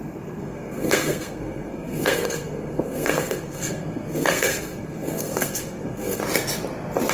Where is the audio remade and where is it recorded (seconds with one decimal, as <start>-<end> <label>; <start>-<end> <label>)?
0.0-6.2 remade; 6.2-7.1 recorded